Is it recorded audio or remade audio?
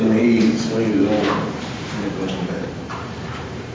remade